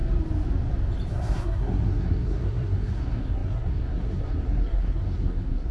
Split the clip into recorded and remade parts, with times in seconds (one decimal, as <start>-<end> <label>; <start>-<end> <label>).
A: 0.0-1.1 recorded; 1.1-5.7 remade